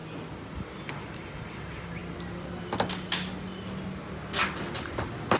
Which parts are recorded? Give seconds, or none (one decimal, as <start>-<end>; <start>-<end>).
0.0-5.4